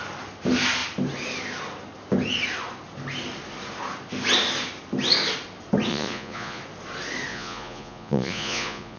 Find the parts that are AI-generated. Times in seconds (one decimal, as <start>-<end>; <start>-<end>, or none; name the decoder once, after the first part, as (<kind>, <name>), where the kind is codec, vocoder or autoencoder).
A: 5.9-6.6 (vocoder, Vocos); 7.3-9.0